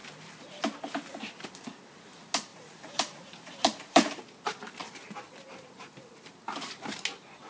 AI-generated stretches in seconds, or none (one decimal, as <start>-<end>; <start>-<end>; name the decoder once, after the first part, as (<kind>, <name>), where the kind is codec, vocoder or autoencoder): 0.0-1.2 (vocoder, BigVGAN v2); 2.5-4.2; 4.8-6.7